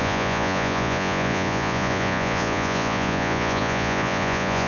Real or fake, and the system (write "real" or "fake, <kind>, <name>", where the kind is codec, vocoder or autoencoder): fake, vocoder, Vocos